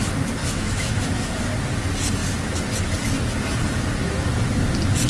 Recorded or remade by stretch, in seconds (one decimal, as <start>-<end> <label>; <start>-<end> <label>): 0.0-0.4 recorded; 0.4-1.4 remade; 1.4-5.1 recorded